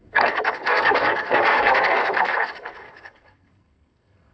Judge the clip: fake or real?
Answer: fake